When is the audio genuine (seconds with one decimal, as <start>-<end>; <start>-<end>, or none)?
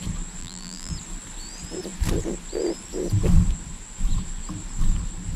0.0-0.4; 0.9-5.4